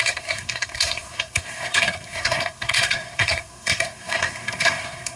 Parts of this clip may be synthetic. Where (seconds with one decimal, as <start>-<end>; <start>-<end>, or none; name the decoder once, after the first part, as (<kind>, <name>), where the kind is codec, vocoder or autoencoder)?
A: 0.0-5.2 (codec, SNAC)